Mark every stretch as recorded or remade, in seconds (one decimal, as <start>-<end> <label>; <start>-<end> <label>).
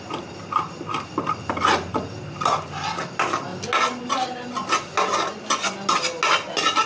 0.0-6.9 recorded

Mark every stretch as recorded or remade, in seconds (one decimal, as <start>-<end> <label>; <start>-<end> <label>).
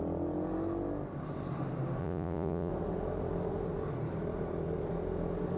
0.0-2.0 recorded; 2.0-2.7 remade; 2.7-5.6 recorded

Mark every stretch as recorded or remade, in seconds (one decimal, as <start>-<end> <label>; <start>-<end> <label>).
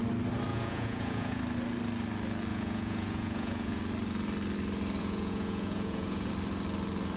0.0-0.5 recorded; 0.5-1.4 remade; 1.4-2.5 recorded; 2.5-3.8 remade; 3.8-5.0 recorded; 5.0-6.3 remade; 6.3-7.2 recorded